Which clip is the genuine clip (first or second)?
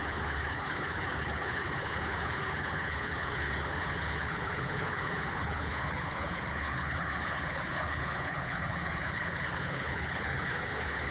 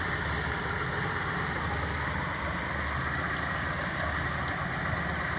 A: second